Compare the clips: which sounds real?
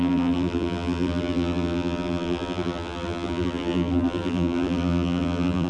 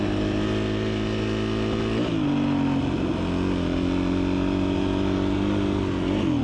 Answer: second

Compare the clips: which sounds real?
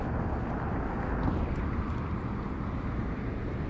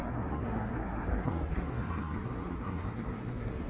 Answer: first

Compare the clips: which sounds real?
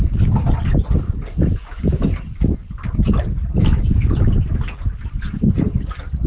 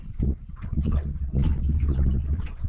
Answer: first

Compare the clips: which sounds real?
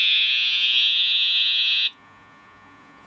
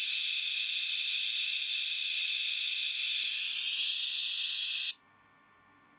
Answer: second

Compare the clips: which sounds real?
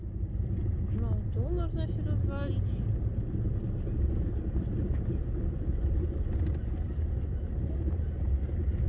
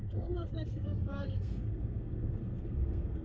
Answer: first